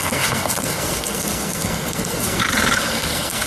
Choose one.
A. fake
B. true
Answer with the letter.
A